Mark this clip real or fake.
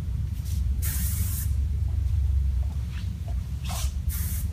fake